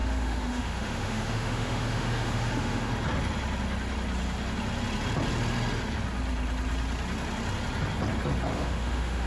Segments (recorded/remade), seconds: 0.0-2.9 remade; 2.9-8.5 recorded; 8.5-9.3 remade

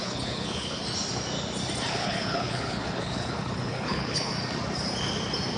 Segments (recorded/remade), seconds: 0.0-0.8 remade; 0.8-1.9 recorded; 1.9-4.3 remade; 4.3-5.6 recorded

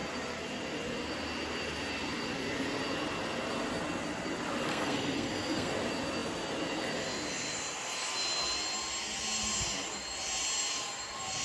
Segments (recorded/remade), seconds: 0.0-4.7 recorded; 4.7-5.7 remade; 5.7-11.4 recorded

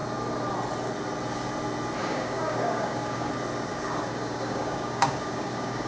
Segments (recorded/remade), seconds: 0.0-2.0 recorded; 2.0-3.3 remade; 3.3-3.7 recorded; 3.7-5.9 remade

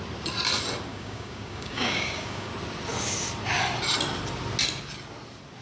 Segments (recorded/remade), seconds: 0.0-0.9 recorded; 0.9-2.5 remade; 2.5-5.6 recorded

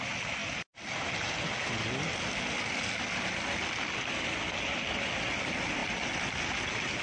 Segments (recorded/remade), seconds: 0.0-7.0 recorded